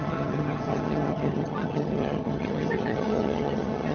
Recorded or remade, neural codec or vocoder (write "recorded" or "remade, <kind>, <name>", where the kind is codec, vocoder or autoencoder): remade, vocoder, HiFi-GAN